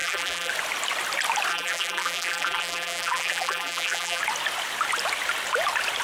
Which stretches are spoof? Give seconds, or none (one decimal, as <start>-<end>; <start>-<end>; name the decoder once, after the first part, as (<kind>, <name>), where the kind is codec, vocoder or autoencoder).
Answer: 0.0-0.5 (vocoder, BigVGAN v2); 1.5-4.2